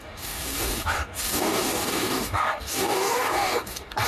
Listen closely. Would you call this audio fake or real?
fake